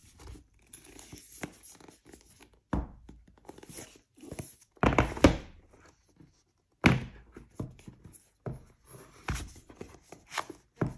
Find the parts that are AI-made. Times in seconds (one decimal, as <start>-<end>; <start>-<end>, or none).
none